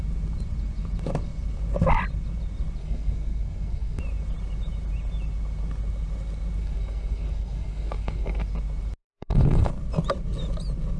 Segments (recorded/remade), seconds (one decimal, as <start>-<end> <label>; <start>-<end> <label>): 0.0-2.8 recorded; 2.8-4.0 remade; 4.0-6.6 recorded; 6.6-8.5 remade; 8.5-9.0 recorded; 9.0-9.7 remade; 9.7-11.0 recorded